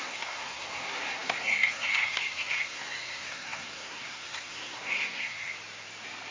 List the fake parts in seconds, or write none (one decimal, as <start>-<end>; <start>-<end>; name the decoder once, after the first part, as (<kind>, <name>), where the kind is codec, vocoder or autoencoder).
0.0-5.5 (codec, SNAC)